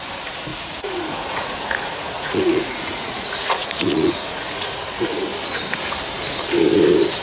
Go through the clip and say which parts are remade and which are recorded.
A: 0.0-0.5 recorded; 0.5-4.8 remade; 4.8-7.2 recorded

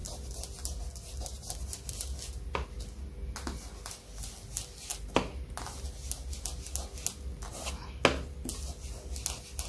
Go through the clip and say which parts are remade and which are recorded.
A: 0.0-9.7 recorded

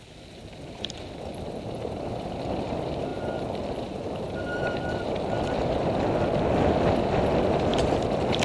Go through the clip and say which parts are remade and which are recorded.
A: 0.0-8.4 recorded

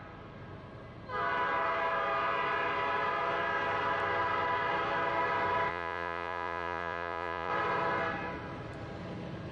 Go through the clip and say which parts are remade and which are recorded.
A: 0.0-5.7 recorded; 5.7-7.5 remade; 7.5-9.5 recorded

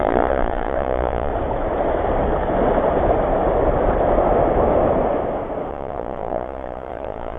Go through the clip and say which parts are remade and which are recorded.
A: 0.0-1.3 remade; 1.3-5.7 recorded; 5.7-7.4 remade

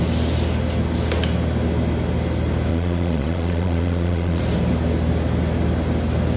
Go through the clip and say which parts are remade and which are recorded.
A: 0.0-2.7 recorded; 2.7-4.4 remade; 4.4-6.4 recorded

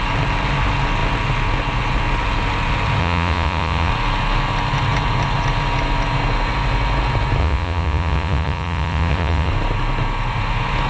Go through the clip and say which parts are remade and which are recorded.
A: 0.0-3.0 recorded; 3.0-3.9 remade; 3.9-7.4 recorded; 7.4-9.5 remade; 9.5-10.9 recorded